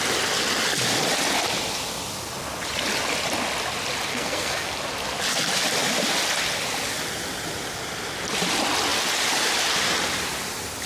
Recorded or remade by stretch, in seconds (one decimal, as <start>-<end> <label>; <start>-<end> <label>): 0.0-4.1 recorded; 4.1-4.8 remade; 4.8-10.9 recorded